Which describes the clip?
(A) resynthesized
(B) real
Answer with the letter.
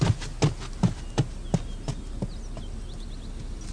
B